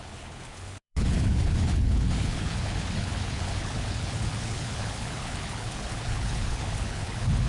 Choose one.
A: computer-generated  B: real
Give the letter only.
A